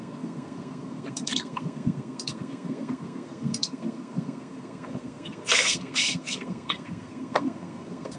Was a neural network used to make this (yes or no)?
yes